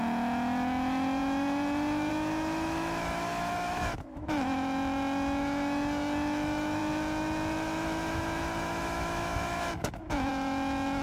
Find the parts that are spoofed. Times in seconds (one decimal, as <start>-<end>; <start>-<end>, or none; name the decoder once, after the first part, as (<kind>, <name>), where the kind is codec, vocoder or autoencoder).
0.0-11.0 (autoencoder, DAC-VAE)

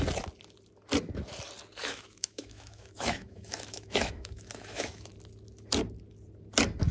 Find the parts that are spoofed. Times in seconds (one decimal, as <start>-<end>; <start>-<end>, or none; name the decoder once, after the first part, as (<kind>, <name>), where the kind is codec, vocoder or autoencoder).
1.8-5.1 (autoencoder, DAC-VAE)

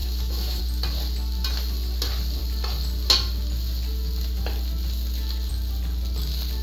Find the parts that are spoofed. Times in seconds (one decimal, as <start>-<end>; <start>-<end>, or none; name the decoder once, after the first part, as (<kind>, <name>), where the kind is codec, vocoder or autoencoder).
0.0-0.6 (autoencoder, DAC-VAE)

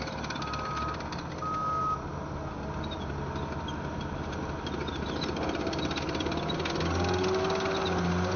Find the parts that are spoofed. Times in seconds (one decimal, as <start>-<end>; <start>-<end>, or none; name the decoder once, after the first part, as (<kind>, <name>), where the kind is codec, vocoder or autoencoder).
none